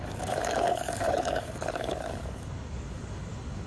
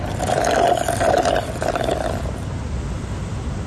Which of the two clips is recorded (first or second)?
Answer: second